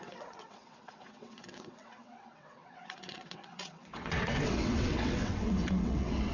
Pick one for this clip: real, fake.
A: fake